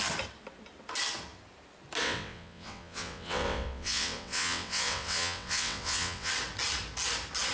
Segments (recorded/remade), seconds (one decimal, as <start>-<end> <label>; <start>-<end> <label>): 0.0-2.0 recorded; 2.0-6.3 remade; 6.3-7.5 recorded